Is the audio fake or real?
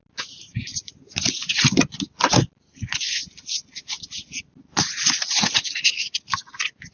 real